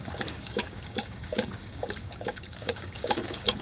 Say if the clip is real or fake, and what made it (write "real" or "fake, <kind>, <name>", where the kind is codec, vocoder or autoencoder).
fake, codec, DAC